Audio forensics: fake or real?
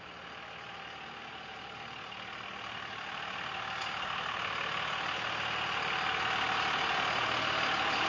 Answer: real